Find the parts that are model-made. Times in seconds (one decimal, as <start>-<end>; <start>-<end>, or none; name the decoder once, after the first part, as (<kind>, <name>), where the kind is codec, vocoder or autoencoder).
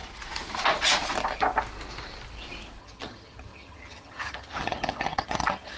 2.8-5.8 (vocoder, HiFi-GAN)